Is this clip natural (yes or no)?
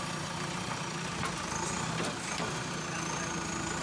yes